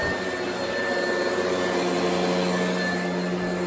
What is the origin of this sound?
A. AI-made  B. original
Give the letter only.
B